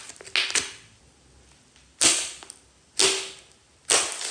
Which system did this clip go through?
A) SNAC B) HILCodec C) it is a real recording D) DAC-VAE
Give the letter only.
C